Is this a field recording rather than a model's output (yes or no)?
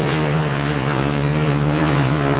no